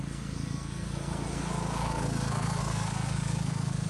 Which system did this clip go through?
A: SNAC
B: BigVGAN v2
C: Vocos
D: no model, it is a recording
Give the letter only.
A